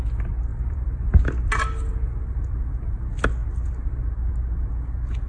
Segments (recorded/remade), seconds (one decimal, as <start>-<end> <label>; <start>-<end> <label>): 0.0-0.5 recorded; 0.5-1.2 remade; 1.2-1.9 recorded; 1.9-3.0 remade; 3.0-5.3 recorded